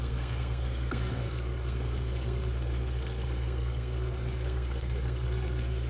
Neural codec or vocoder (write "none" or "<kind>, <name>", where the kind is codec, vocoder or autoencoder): codec, SNAC